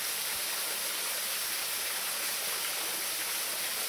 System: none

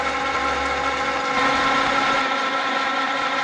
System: none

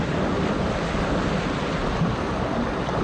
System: none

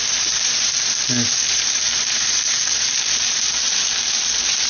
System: vocoder, BigVGAN v2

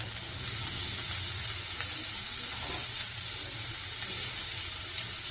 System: none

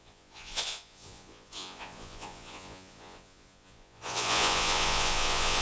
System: vocoder, Vocos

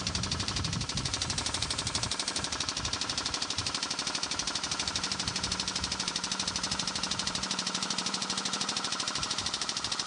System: vocoder, BigVGAN v2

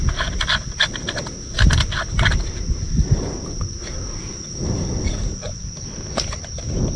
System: none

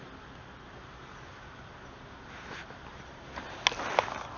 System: none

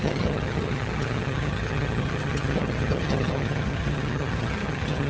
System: vocoder, HiFi-GAN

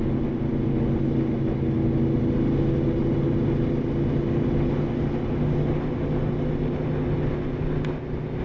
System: none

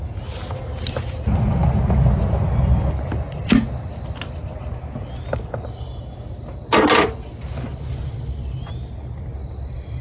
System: none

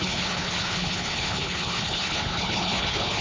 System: codec, HILCodec